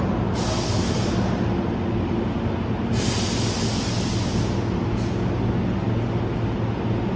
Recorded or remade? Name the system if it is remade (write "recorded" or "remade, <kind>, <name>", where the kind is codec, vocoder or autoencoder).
recorded